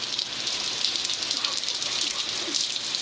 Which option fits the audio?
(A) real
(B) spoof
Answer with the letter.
A